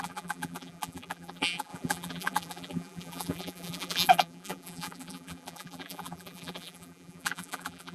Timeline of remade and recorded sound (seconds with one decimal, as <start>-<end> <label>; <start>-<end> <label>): 0.0-7.9 remade